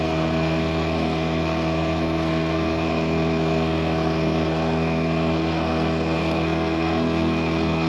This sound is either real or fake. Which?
fake